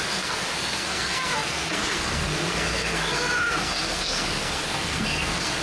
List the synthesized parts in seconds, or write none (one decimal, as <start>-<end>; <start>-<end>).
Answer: 0.0-5.6